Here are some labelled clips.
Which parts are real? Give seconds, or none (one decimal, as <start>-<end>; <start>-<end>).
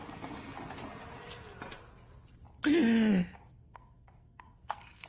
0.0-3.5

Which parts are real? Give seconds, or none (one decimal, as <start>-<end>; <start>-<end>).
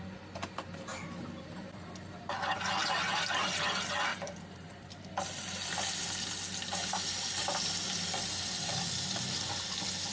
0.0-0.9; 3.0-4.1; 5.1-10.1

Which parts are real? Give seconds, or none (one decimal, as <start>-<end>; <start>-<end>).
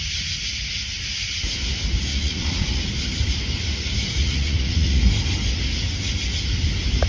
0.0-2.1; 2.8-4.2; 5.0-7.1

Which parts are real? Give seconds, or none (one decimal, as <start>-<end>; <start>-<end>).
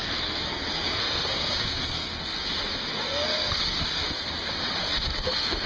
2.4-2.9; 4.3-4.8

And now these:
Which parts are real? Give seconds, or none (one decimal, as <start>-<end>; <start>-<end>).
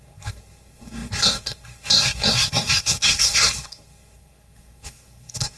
none